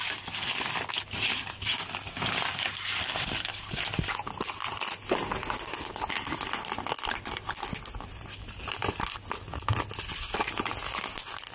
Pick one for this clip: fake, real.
real